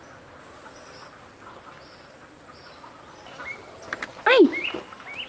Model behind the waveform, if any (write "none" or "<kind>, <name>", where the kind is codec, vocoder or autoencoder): none